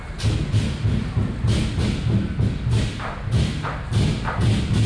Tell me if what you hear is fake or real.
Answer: real